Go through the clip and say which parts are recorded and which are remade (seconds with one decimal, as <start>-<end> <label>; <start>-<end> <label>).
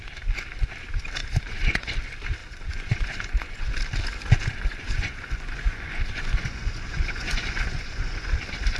0.0-1.2 recorded; 1.2-1.9 remade; 1.9-2.4 recorded; 2.4-3.7 remade; 3.7-4.7 recorded; 4.7-8.3 remade; 8.3-8.8 recorded